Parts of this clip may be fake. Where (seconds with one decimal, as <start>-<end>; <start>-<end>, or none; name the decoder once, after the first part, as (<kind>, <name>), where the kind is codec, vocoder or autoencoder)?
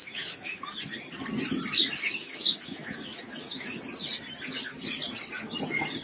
0.0-0.8 (autoencoder, DAC-VAE); 2.0-3.8